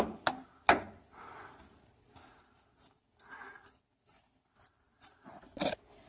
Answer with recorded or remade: recorded